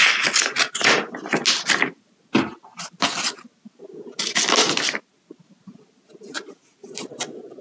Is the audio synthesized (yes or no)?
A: no